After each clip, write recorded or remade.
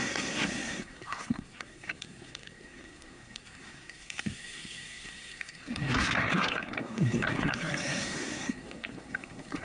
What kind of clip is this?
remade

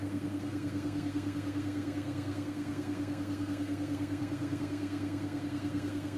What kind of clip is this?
remade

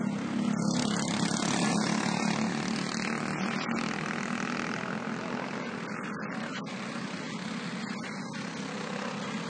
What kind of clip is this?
recorded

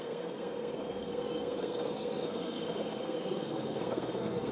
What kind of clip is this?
remade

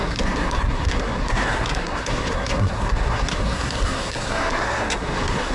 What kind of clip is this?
remade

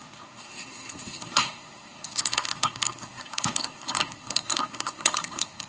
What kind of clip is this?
remade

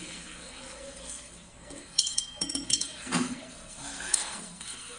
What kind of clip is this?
remade